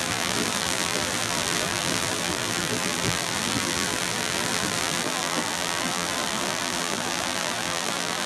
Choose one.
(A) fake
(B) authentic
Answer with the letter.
A